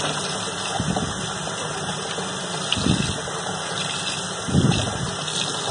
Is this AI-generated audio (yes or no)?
no